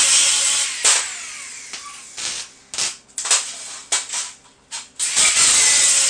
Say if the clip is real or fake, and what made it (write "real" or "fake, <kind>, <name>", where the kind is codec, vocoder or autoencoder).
real